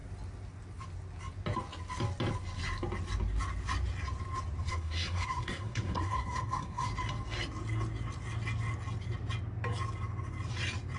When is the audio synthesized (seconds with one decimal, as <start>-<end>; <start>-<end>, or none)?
4.7-6.9